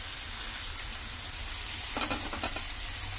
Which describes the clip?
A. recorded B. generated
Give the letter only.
A